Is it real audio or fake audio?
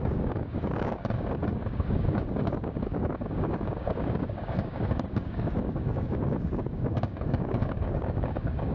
fake